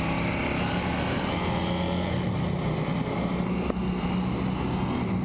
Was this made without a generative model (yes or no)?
yes